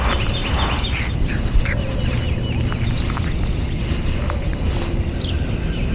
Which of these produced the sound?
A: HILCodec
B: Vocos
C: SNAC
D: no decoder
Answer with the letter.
D